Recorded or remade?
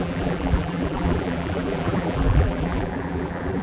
remade